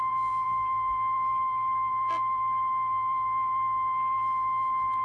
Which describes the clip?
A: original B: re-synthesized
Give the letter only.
B